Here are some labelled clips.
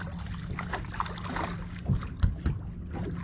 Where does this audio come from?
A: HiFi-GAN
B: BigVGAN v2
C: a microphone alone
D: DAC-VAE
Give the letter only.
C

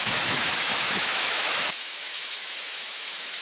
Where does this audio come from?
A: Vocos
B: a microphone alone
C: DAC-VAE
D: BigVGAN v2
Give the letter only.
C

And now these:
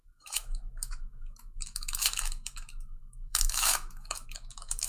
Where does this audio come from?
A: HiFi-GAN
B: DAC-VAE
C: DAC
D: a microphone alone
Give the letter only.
B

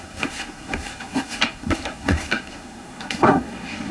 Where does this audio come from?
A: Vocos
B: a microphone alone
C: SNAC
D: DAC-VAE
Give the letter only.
C